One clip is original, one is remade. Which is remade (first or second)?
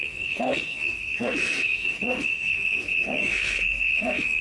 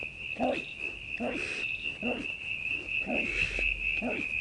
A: first